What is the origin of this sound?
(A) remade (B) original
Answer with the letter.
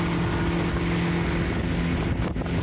B